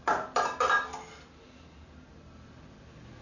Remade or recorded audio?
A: recorded